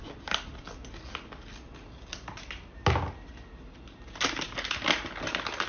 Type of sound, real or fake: real